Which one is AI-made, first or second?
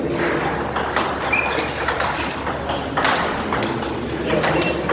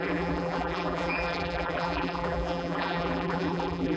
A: second